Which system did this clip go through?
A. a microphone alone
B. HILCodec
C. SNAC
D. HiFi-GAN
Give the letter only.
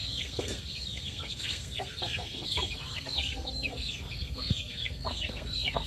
C